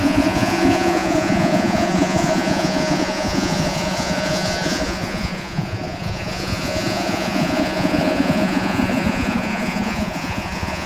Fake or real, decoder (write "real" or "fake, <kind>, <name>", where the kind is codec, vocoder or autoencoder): fake, vocoder, Vocos